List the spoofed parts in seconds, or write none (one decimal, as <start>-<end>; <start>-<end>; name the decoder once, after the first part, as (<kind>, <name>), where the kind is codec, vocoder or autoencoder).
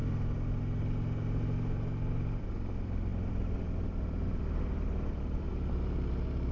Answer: 3.1-5.5 (vocoder, BigVGAN v2)